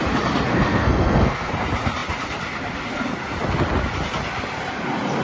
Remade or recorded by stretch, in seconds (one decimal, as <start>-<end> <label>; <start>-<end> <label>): 0.0-0.5 recorded; 0.5-1.5 remade; 1.5-5.2 recorded